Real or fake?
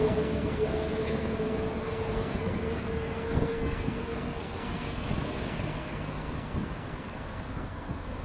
fake